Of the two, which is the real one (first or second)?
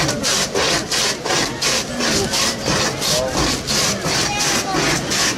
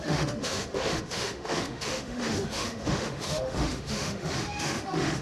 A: first